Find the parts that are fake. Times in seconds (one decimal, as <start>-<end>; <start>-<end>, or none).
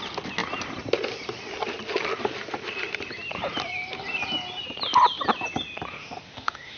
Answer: 5.9-6.8